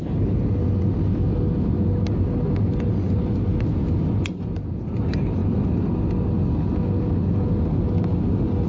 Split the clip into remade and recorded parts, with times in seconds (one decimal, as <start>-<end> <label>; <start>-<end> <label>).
0.0-8.7 recorded